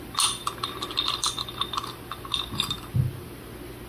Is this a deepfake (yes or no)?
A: no